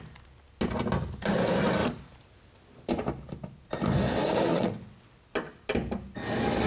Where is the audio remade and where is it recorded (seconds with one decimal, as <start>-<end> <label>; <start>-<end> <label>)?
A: 0.0-4.5 recorded; 4.5-5.1 remade; 5.1-6.7 recorded